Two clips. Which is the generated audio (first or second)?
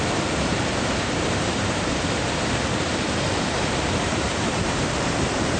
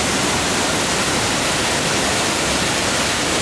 first